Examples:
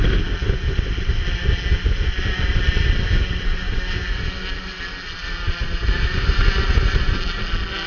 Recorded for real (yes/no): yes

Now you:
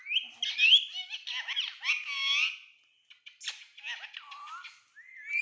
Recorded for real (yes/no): yes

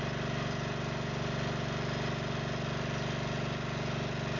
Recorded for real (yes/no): yes